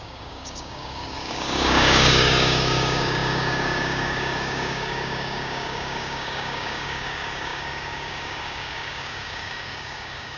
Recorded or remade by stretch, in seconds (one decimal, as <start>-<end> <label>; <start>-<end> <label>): 0.0-10.4 remade